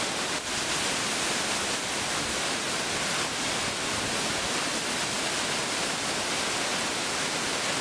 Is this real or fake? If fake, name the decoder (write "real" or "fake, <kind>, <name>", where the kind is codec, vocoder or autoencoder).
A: real